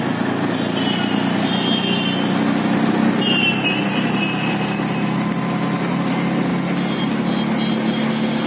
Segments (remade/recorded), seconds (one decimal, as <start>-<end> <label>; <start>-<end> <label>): 0.0-8.5 recorded